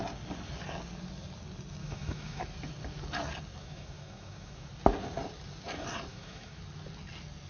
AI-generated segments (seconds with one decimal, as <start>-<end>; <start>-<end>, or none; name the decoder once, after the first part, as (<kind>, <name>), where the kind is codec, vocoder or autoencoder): 1.8-2.4 (autoencoder, DAC-VAE); 3.6-4.7; 6.1-6.6